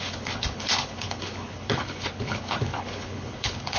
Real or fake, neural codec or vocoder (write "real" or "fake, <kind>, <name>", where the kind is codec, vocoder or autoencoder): fake, codec, HILCodec